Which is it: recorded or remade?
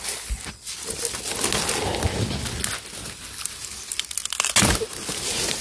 recorded